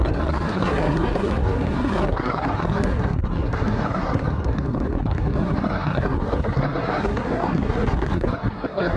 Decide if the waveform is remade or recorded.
remade